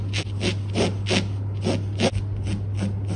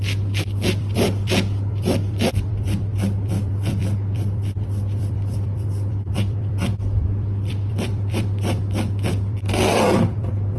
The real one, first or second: first